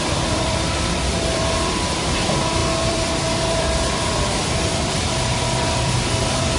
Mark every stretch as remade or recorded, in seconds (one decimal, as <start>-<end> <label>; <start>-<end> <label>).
0.0-6.6 remade